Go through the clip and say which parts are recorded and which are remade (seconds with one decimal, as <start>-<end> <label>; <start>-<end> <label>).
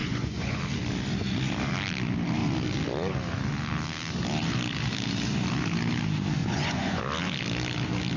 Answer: 0.0-0.6 remade; 0.6-6.4 recorded; 6.4-7.0 remade; 7.0-8.2 recorded